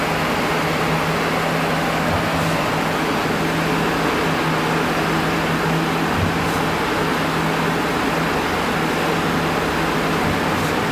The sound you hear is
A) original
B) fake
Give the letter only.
A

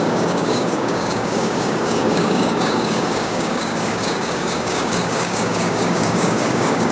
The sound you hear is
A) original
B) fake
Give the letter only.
B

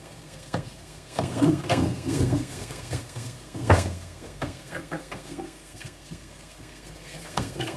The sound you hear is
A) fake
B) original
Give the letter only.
A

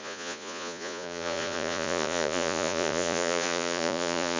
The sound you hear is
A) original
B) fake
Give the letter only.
B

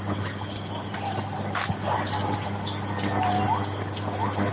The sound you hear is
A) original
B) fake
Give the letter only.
A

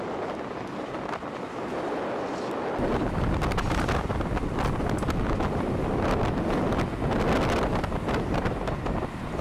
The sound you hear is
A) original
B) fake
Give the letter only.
A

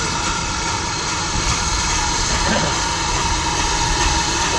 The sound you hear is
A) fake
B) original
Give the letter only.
B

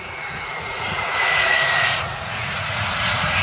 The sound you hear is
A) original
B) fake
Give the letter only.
B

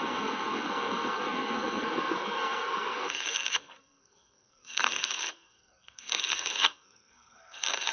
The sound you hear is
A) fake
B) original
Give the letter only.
A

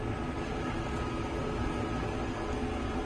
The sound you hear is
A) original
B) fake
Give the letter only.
A